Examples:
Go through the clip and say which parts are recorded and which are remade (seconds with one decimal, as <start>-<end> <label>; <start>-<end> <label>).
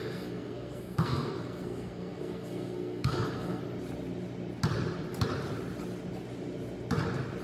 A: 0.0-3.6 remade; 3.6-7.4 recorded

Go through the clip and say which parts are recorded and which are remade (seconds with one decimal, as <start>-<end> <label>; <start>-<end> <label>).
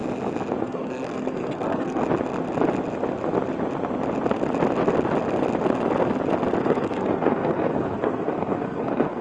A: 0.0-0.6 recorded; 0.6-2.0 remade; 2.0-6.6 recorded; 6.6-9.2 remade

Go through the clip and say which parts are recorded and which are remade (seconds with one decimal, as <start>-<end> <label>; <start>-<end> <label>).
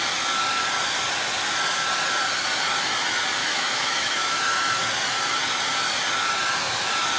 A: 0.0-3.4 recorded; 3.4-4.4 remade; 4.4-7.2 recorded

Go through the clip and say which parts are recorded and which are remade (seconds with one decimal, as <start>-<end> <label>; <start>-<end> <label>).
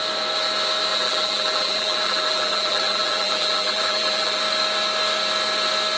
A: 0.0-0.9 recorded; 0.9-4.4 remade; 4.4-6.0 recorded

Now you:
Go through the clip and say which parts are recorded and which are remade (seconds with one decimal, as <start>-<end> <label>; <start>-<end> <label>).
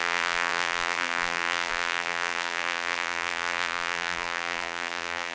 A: 0.0-5.3 remade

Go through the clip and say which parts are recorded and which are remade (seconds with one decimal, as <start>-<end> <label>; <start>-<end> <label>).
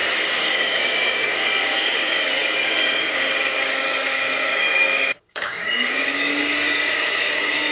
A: 0.0-7.7 remade